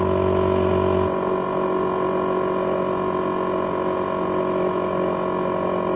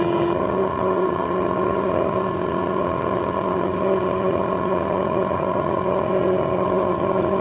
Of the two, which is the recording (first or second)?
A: first